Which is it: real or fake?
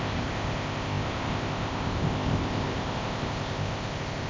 fake